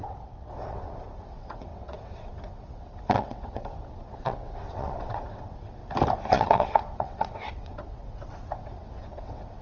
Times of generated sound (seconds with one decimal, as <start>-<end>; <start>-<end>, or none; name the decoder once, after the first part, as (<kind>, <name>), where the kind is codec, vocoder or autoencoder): 0.0-5.8 (vocoder, WaveNeXt); 6.3-9.6